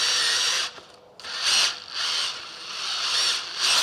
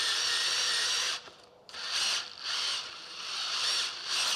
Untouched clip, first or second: first